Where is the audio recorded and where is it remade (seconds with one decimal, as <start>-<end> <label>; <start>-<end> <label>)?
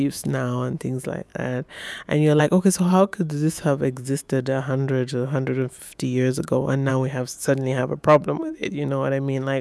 0.0-1.3 remade; 1.3-2.4 recorded; 2.4-9.6 remade